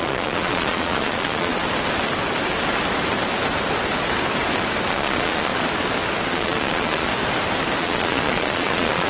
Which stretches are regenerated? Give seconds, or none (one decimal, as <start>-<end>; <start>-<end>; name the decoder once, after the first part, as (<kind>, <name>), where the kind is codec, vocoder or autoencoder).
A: 0.0-1.5 (vocoder, Vocos); 4.9-5.5; 6.3-7.1; 7.8-9.1